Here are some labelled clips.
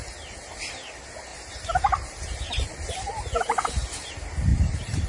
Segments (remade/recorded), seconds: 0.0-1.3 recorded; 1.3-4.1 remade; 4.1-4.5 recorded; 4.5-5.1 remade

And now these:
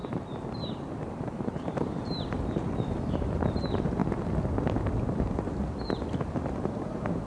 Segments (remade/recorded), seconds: 0.0-4.0 remade; 4.0-6.6 recorded; 6.6-7.3 remade

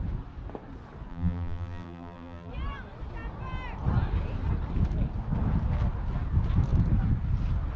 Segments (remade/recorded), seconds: 0.0-1.1 recorded; 1.1-2.5 remade; 2.5-7.8 recorded

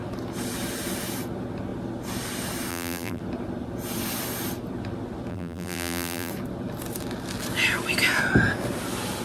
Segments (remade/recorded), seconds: 0.0-2.7 recorded; 2.7-3.2 remade; 3.2-5.3 recorded; 5.3-6.3 remade; 6.3-9.2 recorded